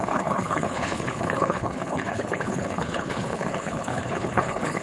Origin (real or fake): fake